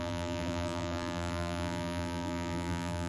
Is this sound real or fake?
fake